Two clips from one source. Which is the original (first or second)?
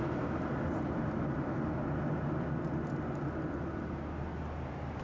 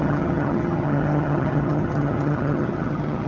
first